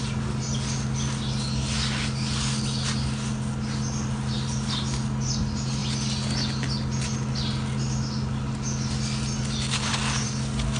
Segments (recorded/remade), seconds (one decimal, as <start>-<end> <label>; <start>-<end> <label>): 0.0-10.8 recorded